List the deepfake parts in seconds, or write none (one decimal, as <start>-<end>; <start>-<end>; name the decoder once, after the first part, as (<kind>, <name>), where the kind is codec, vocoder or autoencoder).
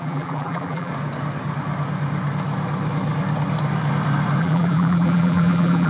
0.0-0.9 (vocoder, BigVGAN v2); 4.4-5.9